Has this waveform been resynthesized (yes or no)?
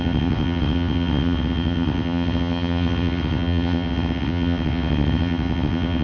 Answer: yes